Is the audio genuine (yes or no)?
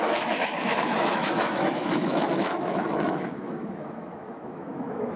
no